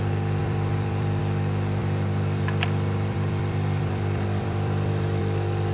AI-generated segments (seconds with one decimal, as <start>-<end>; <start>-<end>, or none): 0.4-1.2; 1.8-5.2